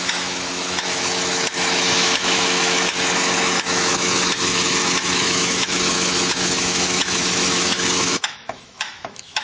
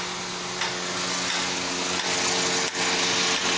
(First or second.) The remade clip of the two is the first